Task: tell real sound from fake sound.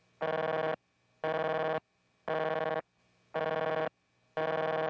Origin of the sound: real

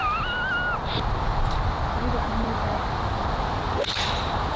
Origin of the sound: fake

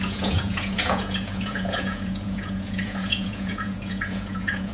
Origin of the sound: fake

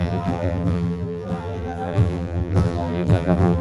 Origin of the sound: fake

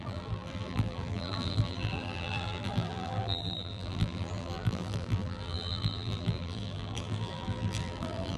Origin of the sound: fake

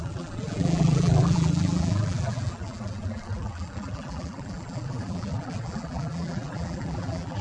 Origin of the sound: fake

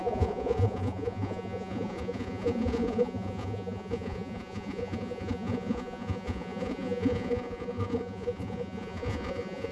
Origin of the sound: fake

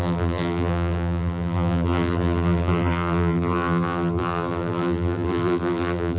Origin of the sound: fake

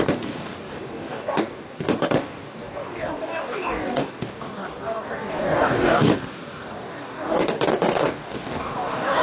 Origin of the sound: fake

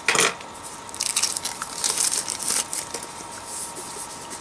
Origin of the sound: real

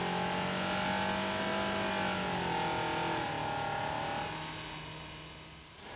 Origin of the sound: real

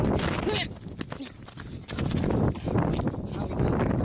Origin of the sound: real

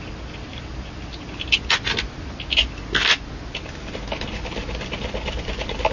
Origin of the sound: real